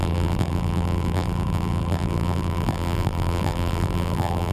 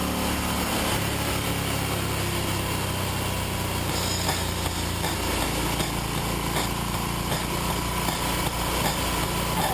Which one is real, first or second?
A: second